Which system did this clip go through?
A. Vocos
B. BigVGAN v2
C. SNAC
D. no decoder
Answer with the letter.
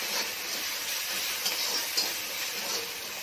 D